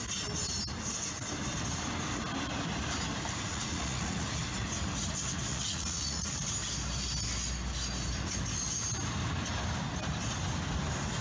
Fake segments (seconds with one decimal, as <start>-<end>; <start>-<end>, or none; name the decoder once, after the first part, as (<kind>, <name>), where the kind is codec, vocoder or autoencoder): 3.5-4.4 (vocoder, Vocos); 5.5-6.5

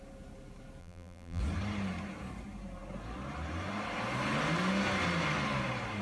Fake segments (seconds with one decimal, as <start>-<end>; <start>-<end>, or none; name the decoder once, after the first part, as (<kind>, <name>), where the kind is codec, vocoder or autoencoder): 0.8-1.4 (vocoder, BigVGAN v2)

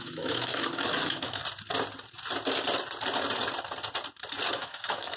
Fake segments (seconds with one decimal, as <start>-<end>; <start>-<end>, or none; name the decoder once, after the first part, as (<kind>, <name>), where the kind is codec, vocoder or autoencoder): 0.0-1.4 (autoencoder, DAC-VAE); 4.5-5.2

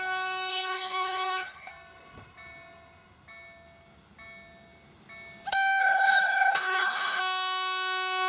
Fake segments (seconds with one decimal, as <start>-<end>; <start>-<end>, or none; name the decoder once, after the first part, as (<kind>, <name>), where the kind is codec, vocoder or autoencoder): 0.5-1.7 (codec, HILCodec); 5.8-7.2

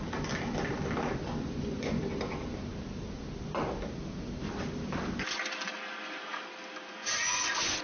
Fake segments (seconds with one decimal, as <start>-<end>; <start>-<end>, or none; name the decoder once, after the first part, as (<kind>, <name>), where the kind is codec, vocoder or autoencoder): 1.4-2.0 (vocoder, Vocos); 7.0-7.8

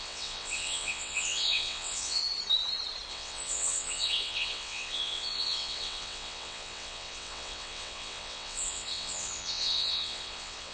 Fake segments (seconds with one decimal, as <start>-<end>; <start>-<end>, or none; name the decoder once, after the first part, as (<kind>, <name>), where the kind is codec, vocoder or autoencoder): 0.0-2.2 (vocoder, WaveNeXt); 3.1-10.7